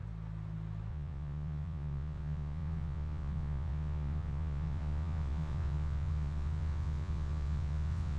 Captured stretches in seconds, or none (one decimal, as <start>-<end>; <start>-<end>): 0.0-0.9